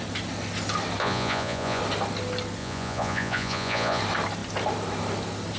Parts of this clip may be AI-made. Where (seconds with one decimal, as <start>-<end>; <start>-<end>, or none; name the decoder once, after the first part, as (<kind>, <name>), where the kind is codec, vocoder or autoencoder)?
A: 1.0-1.8 (vocoder, Vocos); 2.6-4.0